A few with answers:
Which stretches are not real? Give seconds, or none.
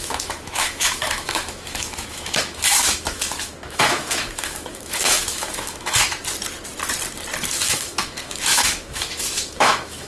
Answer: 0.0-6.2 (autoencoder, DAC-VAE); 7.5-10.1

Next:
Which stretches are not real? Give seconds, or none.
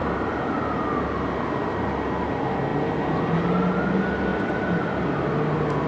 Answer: 0.0-0.9 (vocoder, BigVGAN v2)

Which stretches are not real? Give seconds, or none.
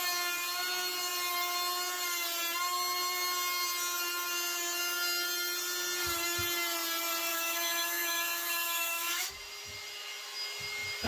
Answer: 7.3-9.3 (autoencoder, DAC-VAE)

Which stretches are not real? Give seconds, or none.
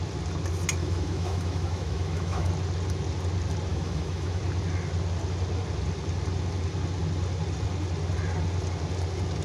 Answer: 0.8-2.5 (autoencoder, DAC-VAE); 3.7-4.4